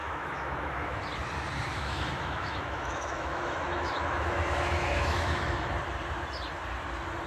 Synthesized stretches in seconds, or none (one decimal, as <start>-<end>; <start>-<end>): 0.0-1.0; 1.7-5.7